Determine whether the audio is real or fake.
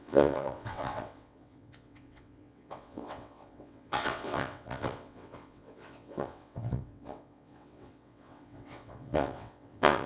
fake